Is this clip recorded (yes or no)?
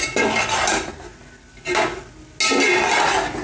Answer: yes